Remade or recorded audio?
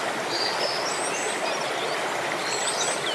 recorded